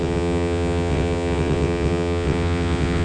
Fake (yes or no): yes